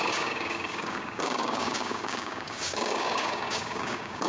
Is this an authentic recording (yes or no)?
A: no